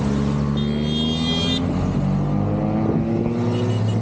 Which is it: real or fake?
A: real